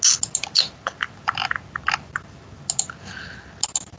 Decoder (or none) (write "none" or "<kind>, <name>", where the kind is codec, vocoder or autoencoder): none